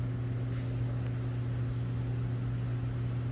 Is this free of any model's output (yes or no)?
yes